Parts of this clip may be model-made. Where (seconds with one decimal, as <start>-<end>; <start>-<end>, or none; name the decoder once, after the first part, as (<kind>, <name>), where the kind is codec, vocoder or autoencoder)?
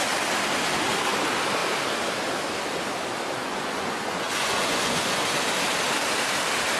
3.4-5.2 (vocoder, Vocos)